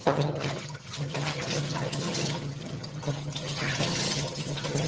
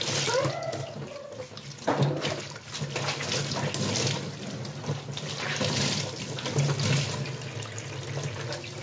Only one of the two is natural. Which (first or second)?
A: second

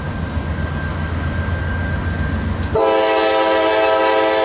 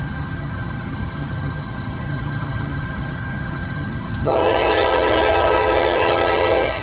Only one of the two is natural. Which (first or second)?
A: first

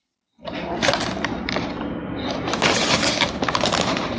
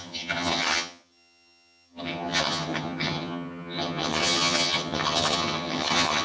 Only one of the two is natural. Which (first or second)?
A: first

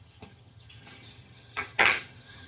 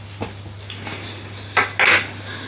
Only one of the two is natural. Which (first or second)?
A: second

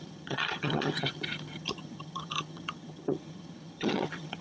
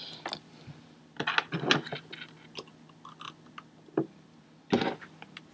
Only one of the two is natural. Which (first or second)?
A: second